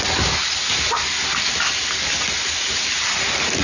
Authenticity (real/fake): real